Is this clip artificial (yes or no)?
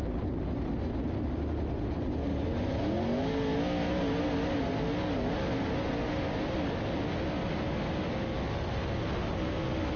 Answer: no